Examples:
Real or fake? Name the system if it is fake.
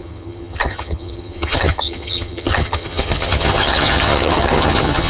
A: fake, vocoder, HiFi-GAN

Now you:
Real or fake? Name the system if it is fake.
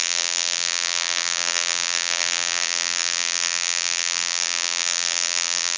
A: fake, vocoder, BigVGAN v2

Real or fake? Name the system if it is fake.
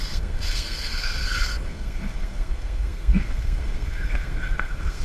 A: fake, codec, SNAC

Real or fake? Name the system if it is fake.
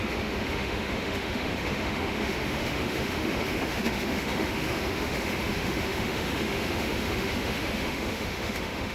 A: fake, autoencoder, DAC-VAE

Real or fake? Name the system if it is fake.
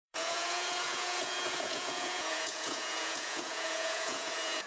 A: fake, vocoder, Vocos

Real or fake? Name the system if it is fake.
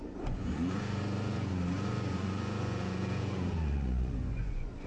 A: fake, vocoder, Vocos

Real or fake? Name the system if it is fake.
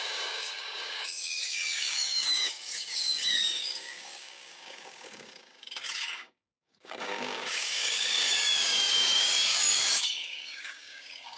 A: fake, codec, DAC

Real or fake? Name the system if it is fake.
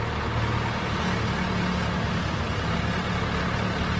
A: real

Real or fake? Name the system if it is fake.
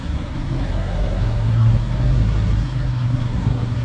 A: fake, codec, SNAC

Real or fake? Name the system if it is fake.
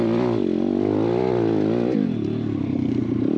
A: real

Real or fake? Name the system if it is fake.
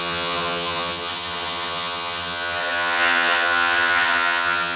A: fake, vocoder, HiFi-GAN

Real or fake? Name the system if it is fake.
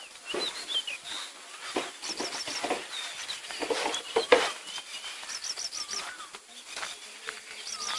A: real